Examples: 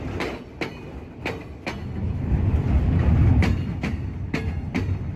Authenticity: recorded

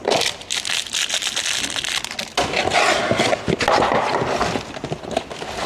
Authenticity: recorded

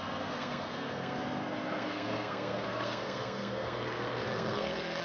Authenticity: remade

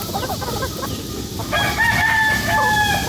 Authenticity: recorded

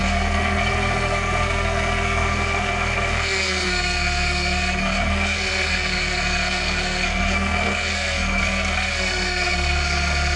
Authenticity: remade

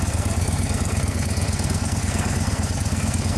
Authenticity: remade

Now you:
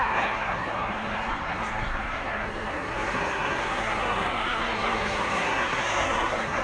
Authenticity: remade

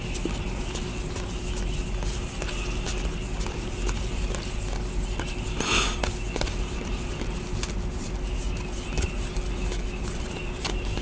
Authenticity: recorded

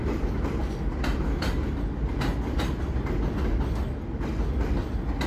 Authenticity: recorded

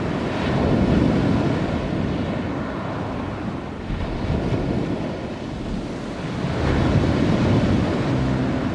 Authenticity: recorded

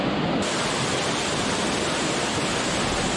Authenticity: recorded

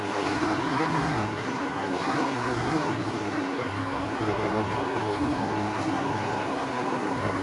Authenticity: remade